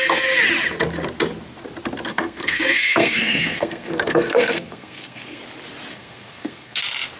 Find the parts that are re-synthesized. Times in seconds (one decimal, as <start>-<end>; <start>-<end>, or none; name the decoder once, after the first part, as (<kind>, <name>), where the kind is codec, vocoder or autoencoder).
2.1-5.4 (codec, SNAC); 5.9-6.8